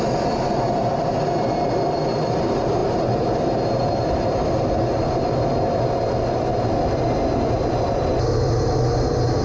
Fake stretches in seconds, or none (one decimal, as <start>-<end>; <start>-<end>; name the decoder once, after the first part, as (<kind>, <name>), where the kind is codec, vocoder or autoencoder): none